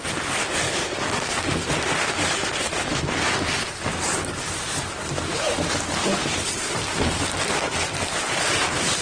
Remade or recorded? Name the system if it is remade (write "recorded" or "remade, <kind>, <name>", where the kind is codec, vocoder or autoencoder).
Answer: recorded